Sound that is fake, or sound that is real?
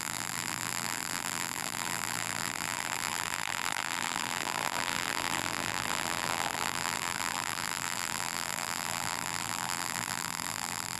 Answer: fake